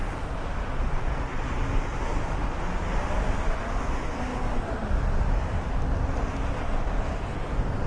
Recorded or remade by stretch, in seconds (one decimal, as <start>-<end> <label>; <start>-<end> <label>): 0.0-7.9 recorded